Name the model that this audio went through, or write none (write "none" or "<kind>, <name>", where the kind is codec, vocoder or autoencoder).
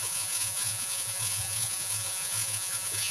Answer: vocoder, Vocos